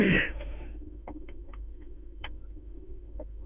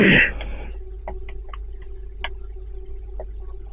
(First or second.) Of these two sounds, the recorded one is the second